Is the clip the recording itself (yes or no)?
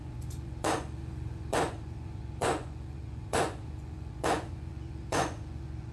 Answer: no